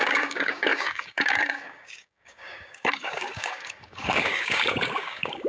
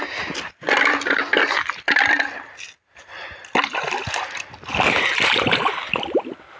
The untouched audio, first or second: second